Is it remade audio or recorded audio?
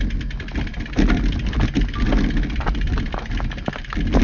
recorded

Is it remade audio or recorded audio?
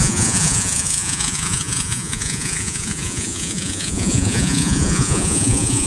remade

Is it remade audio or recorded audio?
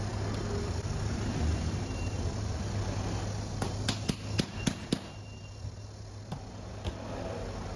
recorded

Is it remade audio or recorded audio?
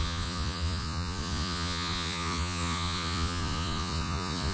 remade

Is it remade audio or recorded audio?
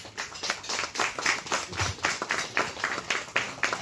recorded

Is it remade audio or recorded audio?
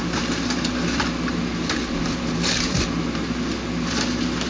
recorded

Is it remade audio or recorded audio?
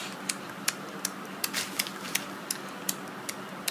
recorded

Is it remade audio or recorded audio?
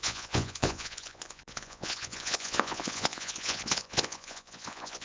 remade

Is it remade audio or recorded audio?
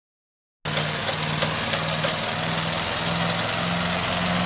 recorded